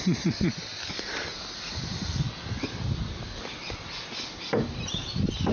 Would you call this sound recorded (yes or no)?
yes